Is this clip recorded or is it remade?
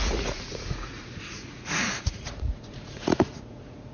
remade